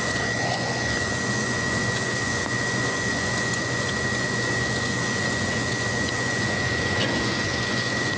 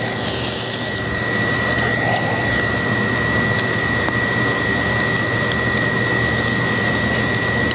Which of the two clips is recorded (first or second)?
second